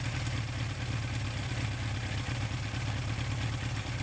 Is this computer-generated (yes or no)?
no